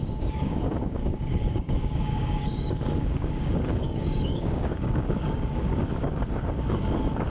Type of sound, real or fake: fake